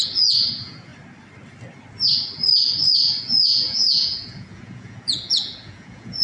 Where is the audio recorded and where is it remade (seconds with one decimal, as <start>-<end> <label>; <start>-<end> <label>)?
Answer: 0.0-0.9 remade; 0.9-3.2 recorded; 3.2-6.2 remade